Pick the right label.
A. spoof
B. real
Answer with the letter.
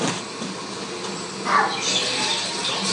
B